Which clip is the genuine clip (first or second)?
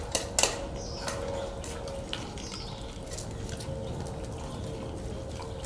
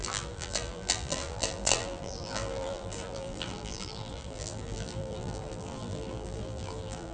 first